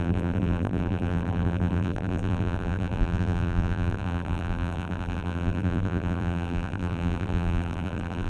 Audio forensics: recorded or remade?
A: remade